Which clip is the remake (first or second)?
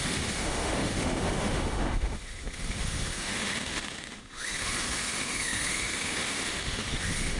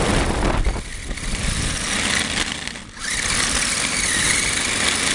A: first